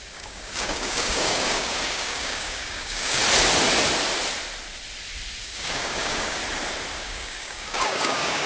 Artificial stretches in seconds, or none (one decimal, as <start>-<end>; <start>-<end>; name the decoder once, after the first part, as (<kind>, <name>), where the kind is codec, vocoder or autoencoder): 0.0-3.2 (codec, DAC); 5.4-6.4; 7.0-8.5